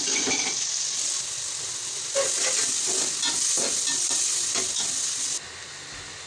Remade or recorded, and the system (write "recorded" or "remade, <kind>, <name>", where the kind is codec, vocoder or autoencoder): recorded